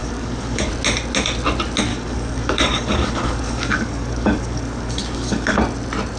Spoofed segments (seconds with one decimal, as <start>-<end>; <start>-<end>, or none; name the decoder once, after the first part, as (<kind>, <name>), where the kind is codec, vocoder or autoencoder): 0.0-0.7 (codec, DAC); 1.9-5.6